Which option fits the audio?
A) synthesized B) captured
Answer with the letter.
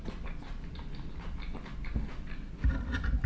B